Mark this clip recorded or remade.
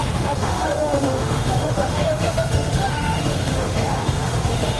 remade